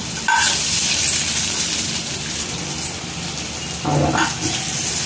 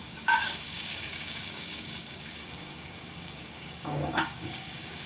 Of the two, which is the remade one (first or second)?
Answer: second